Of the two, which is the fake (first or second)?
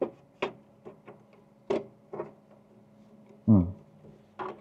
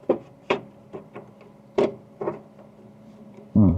second